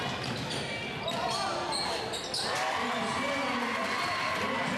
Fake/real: real